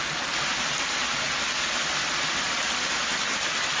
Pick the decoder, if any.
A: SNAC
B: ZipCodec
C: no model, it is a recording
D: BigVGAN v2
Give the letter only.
C